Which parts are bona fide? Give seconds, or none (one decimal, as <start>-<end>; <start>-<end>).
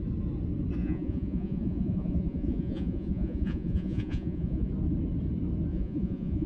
0.0-0.8; 4.7-5.7